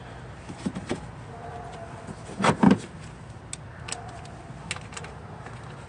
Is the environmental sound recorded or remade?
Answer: recorded